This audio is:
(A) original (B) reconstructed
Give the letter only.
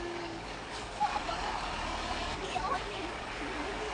B